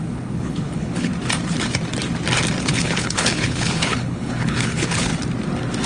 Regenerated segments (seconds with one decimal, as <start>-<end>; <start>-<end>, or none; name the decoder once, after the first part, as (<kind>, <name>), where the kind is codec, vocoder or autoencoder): 0.0-1.1 (codec, HILCodec); 2.6-5.1

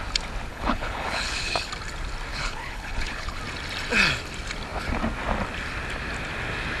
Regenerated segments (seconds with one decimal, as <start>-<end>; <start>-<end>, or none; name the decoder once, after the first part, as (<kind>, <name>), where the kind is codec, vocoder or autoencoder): 0.5-1.7 (codec, HILCodec); 2.3-3.4

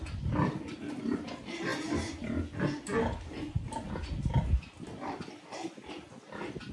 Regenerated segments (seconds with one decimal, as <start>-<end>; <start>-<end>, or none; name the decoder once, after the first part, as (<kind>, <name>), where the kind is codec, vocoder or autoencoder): none

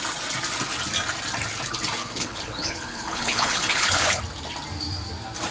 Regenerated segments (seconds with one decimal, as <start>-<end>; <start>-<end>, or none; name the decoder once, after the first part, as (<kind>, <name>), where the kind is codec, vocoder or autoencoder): 2.0-4.2 (codec, HILCodec)